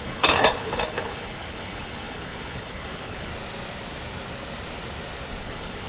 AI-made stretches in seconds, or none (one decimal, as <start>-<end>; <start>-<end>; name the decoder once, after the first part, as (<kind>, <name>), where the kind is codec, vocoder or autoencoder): 0.0-3.3 (codec, HILCodec); 5.4-5.9